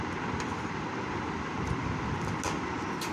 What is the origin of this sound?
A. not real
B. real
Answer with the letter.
B